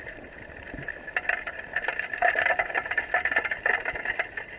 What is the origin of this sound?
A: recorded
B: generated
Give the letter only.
A